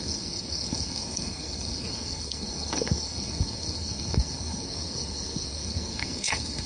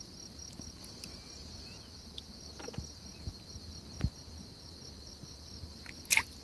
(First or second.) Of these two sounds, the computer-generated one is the first